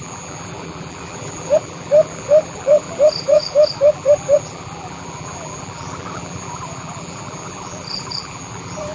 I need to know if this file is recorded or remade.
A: remade